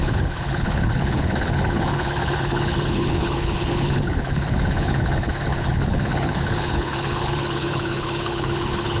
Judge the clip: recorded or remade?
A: remade